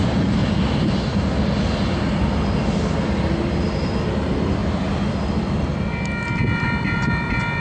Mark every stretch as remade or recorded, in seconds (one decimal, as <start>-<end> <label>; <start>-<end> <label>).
0.0-7.6 recorded